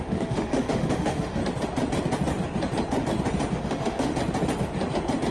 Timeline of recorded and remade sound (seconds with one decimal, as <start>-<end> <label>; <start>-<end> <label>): 0.0-1.4 remade; 1.4-3.6 recorded; 3.6-4.1 remade; 4.1-5.3 recorded